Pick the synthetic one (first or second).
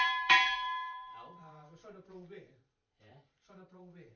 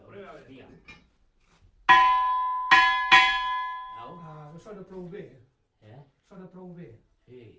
first